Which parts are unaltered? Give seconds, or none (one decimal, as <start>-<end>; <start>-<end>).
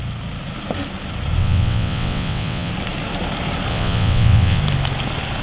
0.0-1.4; 2.7-3.7; 4.6-5.4